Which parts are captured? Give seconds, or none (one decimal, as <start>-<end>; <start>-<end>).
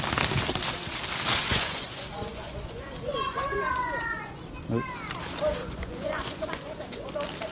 0.0-1.4; 4.4-5.6; 7.1-7.5